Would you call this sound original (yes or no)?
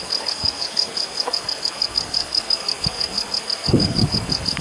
no